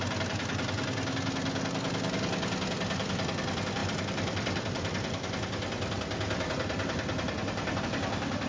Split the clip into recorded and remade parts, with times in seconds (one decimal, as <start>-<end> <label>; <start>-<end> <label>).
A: 0.0-3.8 recorded; 3.8-7.8 remade; 7.8-8.5 recorded

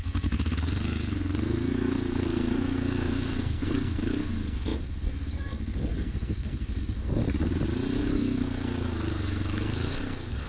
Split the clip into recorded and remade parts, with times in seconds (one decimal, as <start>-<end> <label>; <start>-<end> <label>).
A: 0.0-7.2 remade; 7.2-8.0 recorded; 8.0-10.5 remade

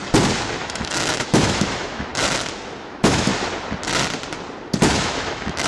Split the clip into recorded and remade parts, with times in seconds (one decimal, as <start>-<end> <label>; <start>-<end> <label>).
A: 0.0-0.6 recorded; 0.6-2.1 remade; 2.1-2.8 recorded; 2.8-3.3 remade; 3.3-4.9 recorded; 4.9-5.7 remade

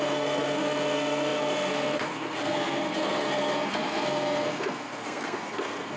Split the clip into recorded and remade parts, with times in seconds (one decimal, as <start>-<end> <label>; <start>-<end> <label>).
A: 0.0-6.0 remade